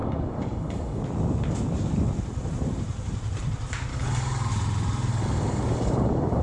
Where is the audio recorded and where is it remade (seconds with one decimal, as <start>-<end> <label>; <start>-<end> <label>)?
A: 0.0-1.0 remade; 1.0-3.9 recorded; 3.9-4.5 remade; 4.5-5.1 recorded; 5.1-6.4 remade